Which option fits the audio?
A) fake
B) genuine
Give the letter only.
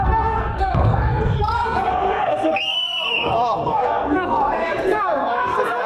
A